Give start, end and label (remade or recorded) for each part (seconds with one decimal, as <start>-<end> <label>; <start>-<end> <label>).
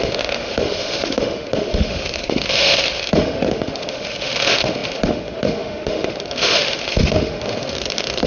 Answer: 0.0-8.3 remade